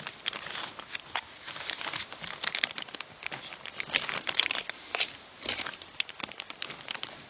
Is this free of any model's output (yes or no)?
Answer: yes